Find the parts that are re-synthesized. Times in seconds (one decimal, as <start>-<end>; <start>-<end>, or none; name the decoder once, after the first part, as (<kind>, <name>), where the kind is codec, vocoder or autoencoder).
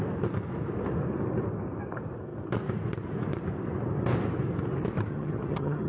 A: 5.1-5.9 (vocoder, HiFi-GAN)